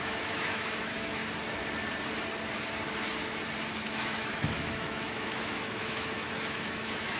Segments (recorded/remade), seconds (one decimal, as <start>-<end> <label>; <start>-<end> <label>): 0.0-1.2 remade; 1.2-3.8 recorded; 3.8-7.2 remade